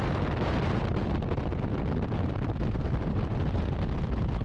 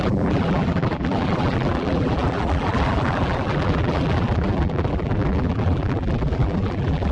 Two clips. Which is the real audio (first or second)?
first